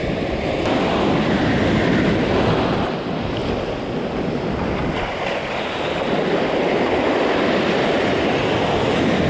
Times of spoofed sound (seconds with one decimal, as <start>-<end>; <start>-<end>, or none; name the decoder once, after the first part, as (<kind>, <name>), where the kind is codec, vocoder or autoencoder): none

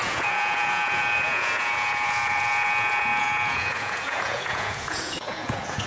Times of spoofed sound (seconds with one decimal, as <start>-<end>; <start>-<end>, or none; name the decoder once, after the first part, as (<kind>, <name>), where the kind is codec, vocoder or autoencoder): 0.0-5.9 (vocoder, Vocos)